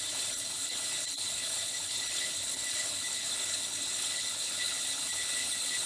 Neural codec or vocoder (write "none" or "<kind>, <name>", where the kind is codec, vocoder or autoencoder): codec, HILCodec